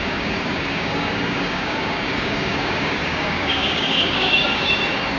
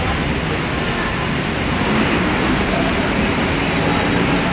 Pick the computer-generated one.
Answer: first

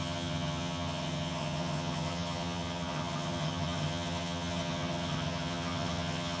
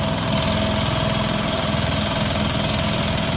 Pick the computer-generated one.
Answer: first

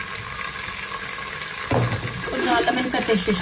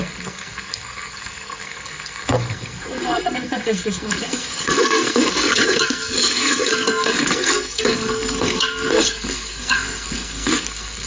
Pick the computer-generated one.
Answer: second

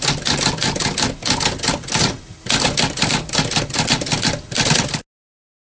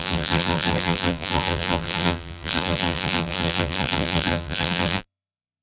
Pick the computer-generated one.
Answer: second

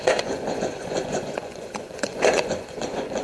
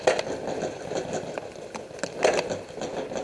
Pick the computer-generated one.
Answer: first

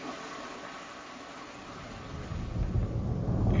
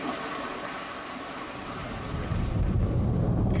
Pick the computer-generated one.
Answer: second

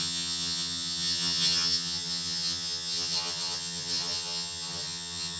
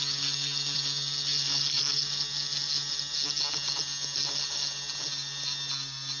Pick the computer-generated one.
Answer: first